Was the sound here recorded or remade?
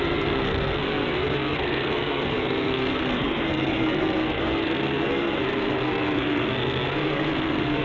remade